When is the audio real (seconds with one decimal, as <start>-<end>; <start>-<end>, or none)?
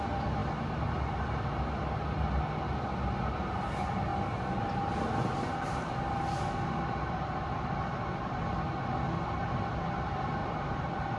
0.0-10.4